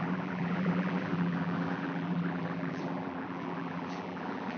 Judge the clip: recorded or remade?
remade